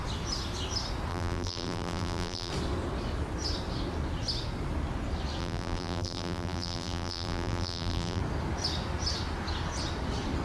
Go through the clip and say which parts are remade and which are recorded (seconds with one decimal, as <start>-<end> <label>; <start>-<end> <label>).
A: 0.0-1.1 recorded; 1.1-2.5 remade; 2.5-5.4 recorded; 5.4-8.2 remade; 8.2-10.4 recorded